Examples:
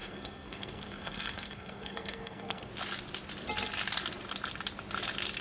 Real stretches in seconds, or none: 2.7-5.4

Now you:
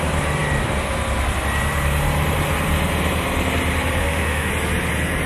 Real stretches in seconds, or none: 0.0-4.0; 4.5-5.3

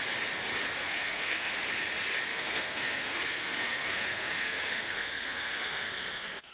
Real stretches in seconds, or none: 0.0-0.8; 1.5-2.3

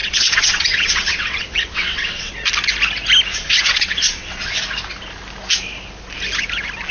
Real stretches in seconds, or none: 2.3-3.3; 4.5-6.9

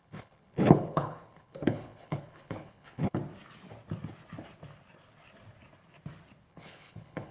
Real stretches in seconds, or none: 3.2-6.5

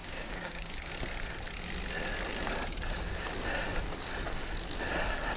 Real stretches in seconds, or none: 0.9-5.4